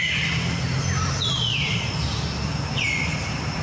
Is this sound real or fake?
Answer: fake